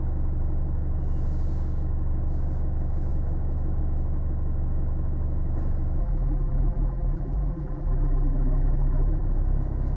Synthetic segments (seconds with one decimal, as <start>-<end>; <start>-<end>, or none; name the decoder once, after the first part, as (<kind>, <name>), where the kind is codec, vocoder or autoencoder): 6.0-9.2 (vocoder, BigVGAN v2)